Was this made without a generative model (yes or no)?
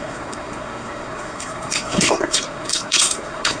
no